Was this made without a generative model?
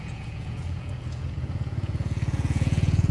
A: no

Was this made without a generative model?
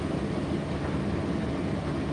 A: yes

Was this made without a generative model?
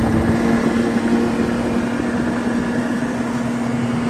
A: yes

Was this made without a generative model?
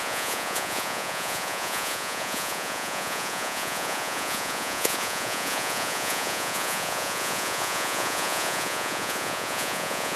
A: no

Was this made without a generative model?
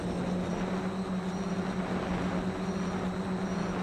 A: yes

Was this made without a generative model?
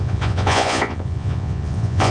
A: no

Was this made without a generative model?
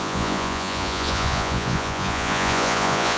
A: no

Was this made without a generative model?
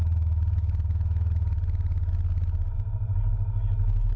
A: yes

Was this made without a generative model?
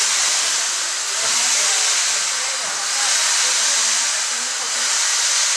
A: yes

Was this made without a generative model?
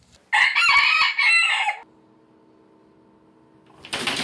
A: yes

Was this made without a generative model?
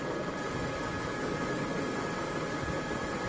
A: yes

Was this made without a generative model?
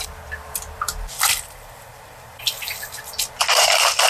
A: no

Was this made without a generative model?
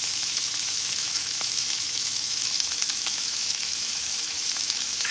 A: no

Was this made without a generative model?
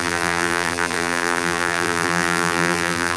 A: no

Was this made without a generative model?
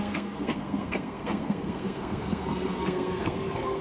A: no